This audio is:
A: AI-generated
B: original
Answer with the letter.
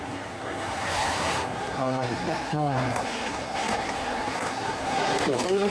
A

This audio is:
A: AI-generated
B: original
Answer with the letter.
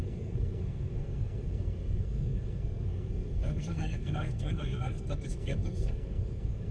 A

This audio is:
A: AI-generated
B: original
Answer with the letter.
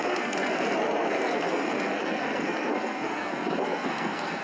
A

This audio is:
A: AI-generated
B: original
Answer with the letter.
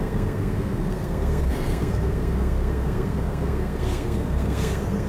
A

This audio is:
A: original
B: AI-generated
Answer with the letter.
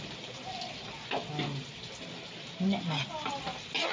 A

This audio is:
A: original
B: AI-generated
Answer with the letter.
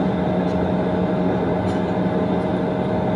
A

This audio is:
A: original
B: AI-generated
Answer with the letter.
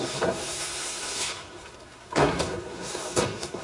B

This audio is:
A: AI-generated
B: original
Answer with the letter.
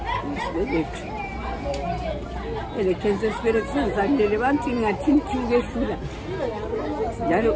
B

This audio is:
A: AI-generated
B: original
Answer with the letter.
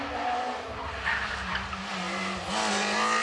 B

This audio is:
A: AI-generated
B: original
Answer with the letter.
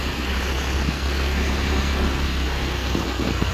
A